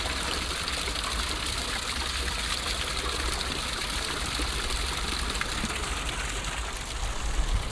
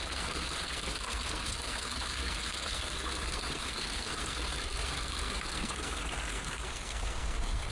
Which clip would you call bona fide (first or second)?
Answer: first